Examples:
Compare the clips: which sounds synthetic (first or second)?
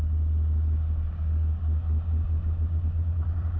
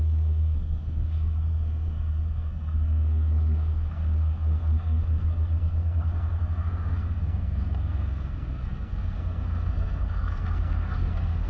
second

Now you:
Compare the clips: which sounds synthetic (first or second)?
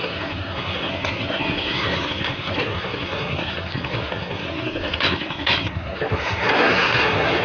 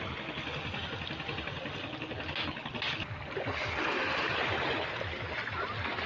first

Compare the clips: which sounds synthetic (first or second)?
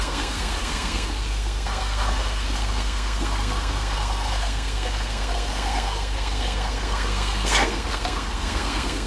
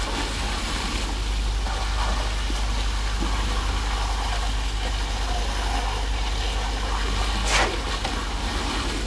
first